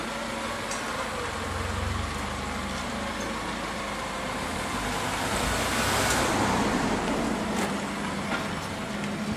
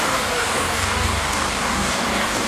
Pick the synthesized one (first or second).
second